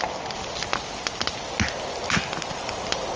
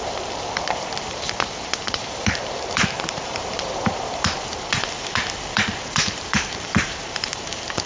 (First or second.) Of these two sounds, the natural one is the first